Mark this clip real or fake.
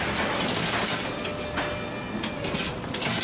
real